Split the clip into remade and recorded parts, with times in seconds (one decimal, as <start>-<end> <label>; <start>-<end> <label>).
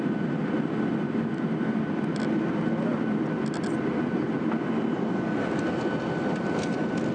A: 0.0-7.1 recorded